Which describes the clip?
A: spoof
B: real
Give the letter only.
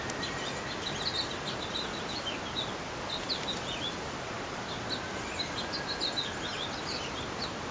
B